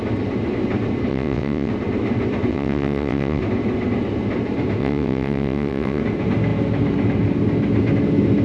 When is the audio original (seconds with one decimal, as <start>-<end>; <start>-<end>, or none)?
0.0-1.1; 1.7-2.5; 3.4-4.8; 6.0-8.4